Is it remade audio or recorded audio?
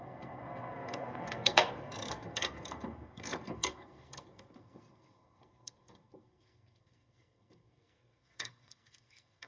remade